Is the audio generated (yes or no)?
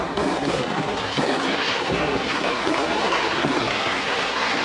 yes